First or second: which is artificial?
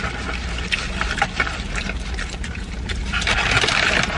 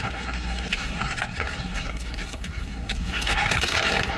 second